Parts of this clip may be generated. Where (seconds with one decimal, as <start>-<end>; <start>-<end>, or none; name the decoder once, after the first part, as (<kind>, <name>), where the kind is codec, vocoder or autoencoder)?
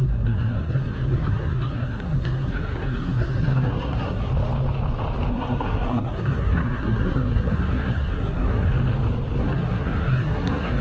0.0-4.3 (codec, SNAC); 5.3-8.7; 9.4-10.8